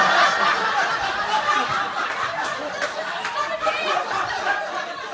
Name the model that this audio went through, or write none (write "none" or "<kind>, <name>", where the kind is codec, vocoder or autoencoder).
none